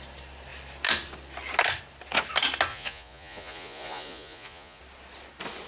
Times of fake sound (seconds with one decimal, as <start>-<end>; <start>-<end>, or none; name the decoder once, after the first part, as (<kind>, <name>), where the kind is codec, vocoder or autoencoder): 2.7-4.8 (vocoder, Vocos)